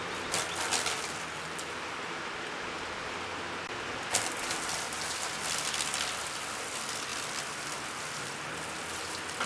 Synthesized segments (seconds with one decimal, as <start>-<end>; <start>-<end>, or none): none